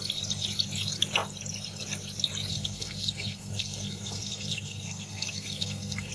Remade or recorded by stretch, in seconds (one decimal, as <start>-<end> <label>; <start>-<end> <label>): 0.0-2.5 recorded; 2.5-6.1 remade